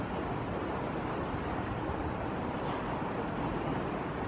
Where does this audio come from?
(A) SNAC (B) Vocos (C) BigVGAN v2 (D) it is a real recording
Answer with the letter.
D